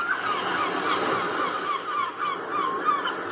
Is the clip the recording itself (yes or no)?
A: yes